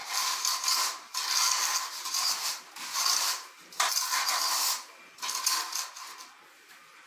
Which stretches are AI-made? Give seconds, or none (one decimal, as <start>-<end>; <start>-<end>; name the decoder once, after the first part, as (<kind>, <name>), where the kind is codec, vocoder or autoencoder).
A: 0.0-1.2 (vocoder, BigVGAN v2); 1.6-4.5